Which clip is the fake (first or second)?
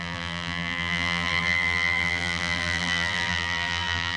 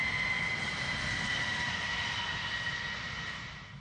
first